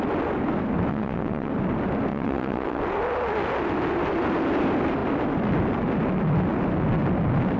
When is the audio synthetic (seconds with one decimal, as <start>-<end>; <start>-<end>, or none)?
0.9-1.5; 2.1-2.8